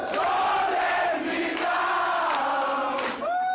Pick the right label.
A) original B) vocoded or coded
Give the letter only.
A